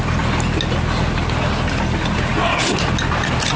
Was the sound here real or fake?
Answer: real